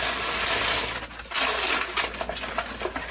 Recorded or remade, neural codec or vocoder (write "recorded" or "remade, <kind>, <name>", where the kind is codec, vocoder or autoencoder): recorded